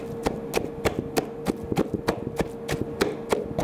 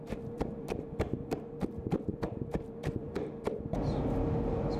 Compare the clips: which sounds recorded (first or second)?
first